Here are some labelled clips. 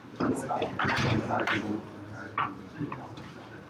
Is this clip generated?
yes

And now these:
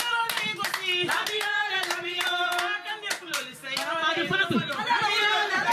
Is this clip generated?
no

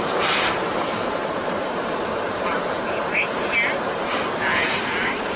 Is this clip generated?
yes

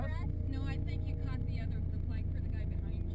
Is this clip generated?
no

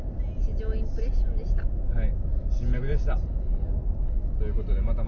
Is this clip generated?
no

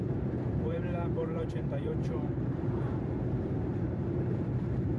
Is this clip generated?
yes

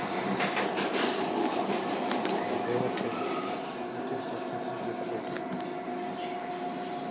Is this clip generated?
no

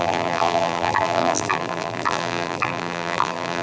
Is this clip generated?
yes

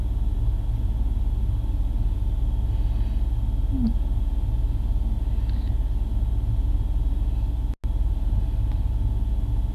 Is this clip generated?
no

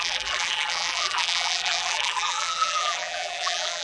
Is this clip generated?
yes